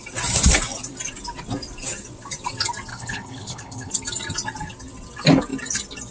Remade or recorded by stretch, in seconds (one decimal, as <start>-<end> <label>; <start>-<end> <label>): 0.0-2.9 recorded; 2.9-3.9 remade; 3.9-6.1 recorded